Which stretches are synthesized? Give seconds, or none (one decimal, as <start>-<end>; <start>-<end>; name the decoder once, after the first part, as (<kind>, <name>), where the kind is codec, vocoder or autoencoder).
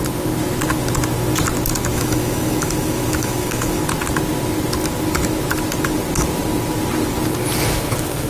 1.9-3.8 (autoencoder, DAC-VAE)